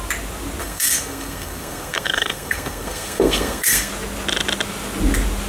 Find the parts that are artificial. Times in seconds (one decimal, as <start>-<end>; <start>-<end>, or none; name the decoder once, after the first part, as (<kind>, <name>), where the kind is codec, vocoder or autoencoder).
0.6-3.9 (codec, SNAC)